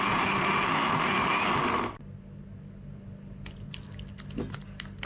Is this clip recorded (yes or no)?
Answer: yes